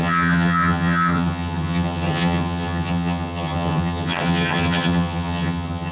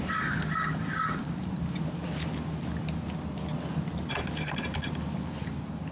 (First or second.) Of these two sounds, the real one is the second